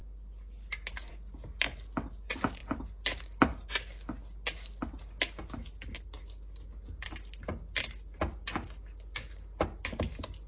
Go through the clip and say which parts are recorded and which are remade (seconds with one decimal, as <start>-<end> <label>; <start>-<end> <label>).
0.0-10.5 recorded